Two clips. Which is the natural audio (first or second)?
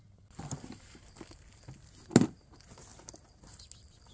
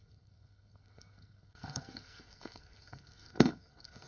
first